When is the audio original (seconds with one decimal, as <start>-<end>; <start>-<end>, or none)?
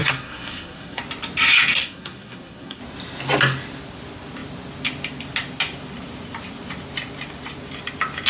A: 1.0-1.8; 2.8-8.3